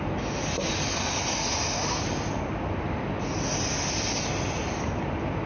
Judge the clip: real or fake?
real